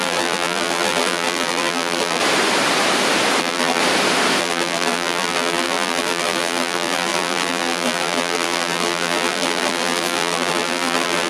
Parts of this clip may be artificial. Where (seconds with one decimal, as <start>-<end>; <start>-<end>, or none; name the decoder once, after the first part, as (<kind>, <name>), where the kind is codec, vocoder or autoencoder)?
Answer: 0.0-2.2 (vocoder, BigVGAN v2); 3.4-3.8; 4.4-11.3